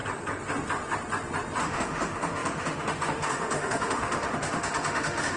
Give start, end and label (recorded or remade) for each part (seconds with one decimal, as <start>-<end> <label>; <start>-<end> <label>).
0.0-1.6 recorded; 1.6-5.4 remade